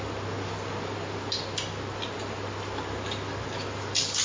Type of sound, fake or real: real